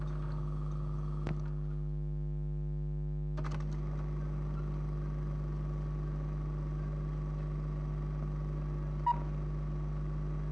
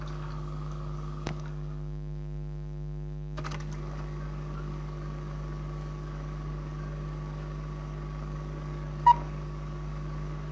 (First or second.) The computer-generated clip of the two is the second